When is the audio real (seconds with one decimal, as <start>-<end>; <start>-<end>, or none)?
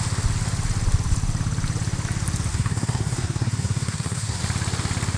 0.0-2.5; 4.4-5.2